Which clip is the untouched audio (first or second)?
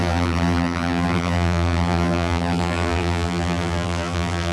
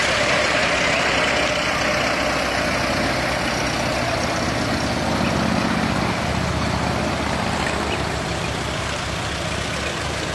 second